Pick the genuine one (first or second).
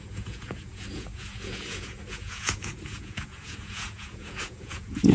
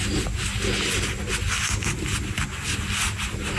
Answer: second